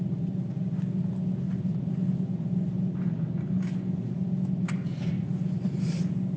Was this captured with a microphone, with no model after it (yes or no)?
yes